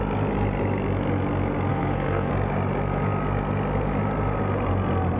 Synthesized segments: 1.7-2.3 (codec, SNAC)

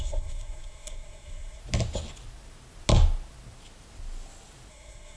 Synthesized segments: 0.0-1.6 (codec, SNAC); 4.7-5.2

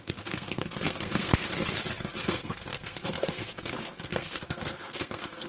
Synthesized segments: 0.0-1.3 (codec, SNAC); 2.3-5.5